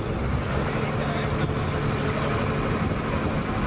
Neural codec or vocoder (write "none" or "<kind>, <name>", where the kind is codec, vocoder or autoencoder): none